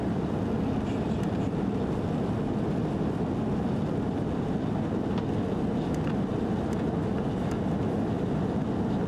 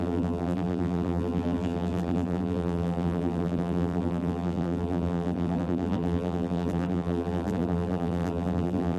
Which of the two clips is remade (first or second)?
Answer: second